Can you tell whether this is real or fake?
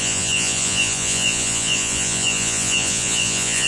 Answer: fake